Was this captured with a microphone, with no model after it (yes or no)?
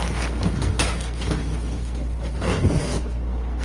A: no